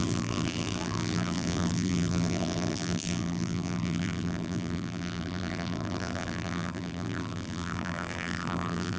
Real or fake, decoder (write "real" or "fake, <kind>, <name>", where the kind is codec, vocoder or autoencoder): fake, vocoder, BigVGAN v2